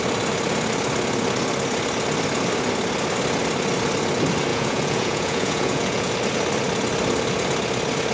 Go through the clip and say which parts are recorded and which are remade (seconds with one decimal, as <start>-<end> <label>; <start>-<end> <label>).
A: 0.0-4.5 recorded; 4.5-6.1 remade; 6.1-8.1 recorded